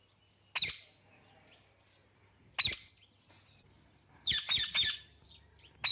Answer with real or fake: real